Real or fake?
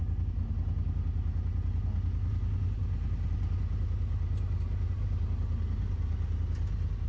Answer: real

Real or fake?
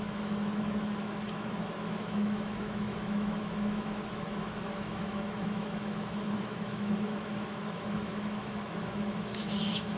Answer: fake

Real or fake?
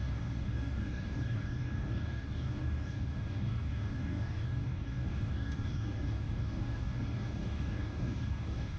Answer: fake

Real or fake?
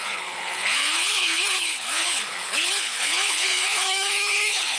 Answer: fake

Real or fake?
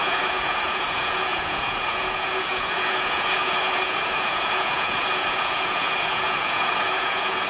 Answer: fake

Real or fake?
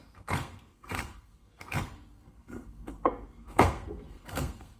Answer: fake